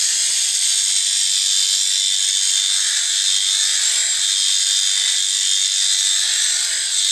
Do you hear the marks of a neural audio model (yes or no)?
no